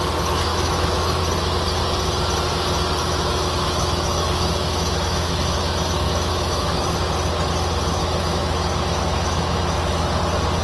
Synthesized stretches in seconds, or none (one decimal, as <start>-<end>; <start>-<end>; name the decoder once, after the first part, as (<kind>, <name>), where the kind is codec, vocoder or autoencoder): 0.5-1.2 (autoencoder, DAC-VAE); 3.0-7.0; 8.0-10.2